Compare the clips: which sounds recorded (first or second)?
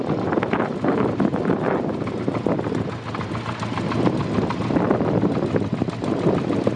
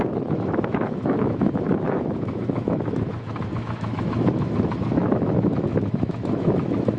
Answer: first